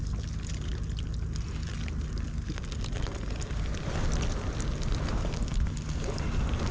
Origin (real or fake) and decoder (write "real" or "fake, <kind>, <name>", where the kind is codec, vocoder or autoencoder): real